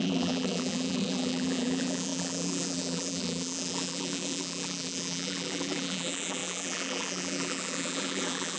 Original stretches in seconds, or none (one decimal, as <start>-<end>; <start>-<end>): none